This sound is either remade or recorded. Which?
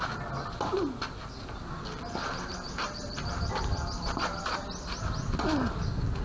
recorded